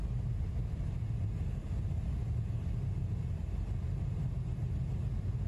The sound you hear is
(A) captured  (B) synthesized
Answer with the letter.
A